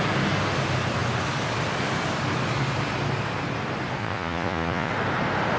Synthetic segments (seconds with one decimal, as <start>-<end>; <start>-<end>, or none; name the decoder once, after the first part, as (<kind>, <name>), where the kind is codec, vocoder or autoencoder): 4.0-4.9 (vocoder, Vocos)